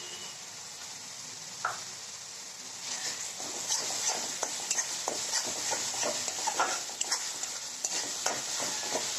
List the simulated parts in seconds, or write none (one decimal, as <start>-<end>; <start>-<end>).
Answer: none